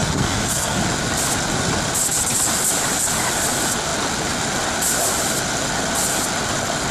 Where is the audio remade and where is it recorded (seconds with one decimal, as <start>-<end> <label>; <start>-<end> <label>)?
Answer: 0.0-0.8 remade; 0.8-6.9 recorded